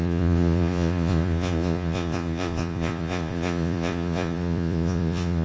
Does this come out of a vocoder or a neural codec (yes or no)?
yes